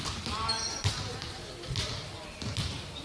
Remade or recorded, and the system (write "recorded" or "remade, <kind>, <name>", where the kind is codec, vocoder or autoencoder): recorded